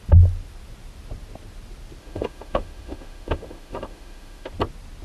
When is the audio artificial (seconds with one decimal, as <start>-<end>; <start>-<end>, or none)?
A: 2.0-4.5

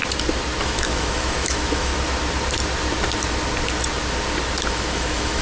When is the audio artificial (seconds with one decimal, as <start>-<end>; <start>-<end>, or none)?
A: 0.6-1.9; 4.7-5.4

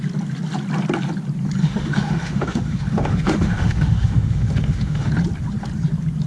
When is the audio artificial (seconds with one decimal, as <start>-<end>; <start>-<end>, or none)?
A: 1.6-5.1

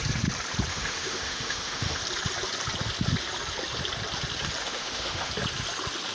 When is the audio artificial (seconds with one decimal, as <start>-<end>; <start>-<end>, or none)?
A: 0.7-2.0; 4.6-5.3

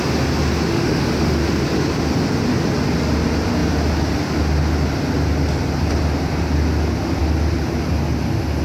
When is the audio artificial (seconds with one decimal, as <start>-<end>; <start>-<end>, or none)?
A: 0.7-1.4

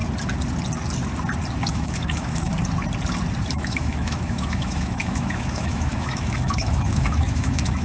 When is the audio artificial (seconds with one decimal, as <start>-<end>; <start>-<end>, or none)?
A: 1.7-2.5; 3.5-7.8

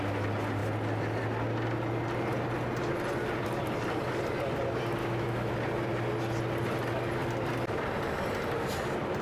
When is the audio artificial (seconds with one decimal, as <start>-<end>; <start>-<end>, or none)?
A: 5.0-5.5